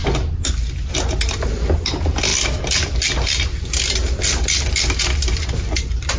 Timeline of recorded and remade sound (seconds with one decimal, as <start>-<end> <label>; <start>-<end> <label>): 0.0-6.2 recorded